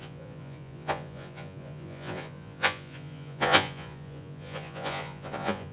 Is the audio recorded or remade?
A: remade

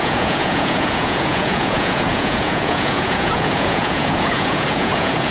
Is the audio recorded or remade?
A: remade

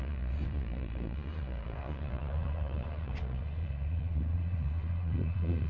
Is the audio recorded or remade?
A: remade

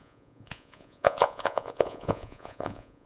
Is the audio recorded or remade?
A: remade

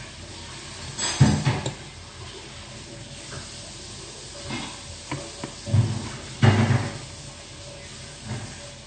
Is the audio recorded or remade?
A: recorded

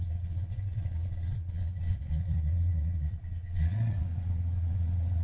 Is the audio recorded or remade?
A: remade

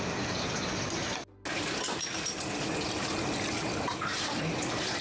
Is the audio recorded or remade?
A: recorded